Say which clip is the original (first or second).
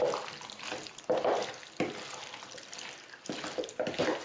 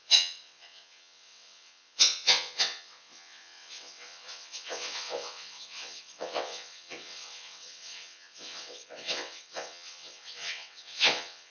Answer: first